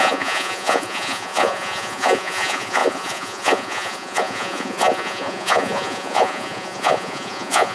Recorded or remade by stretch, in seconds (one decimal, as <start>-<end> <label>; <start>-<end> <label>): 0.0-7.7 remade